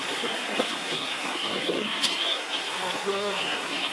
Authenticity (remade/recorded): remade